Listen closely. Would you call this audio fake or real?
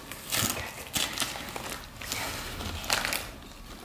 real